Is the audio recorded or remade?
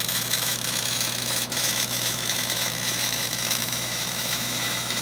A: remade